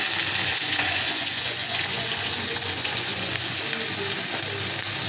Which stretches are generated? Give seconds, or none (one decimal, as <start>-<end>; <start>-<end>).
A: 0.5-3.6